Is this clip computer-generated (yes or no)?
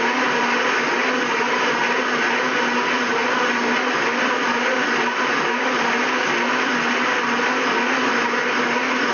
no